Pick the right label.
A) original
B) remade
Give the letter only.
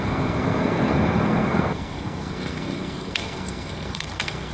B